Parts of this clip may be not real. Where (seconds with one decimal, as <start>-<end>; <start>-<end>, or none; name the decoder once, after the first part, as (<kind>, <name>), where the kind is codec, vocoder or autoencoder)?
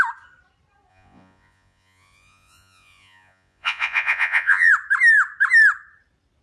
0.9-4.7 (vocoder, Vocos)